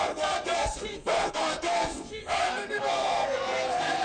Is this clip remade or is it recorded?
remade